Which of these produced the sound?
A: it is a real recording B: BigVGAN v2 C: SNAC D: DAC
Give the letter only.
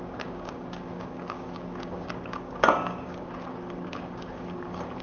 D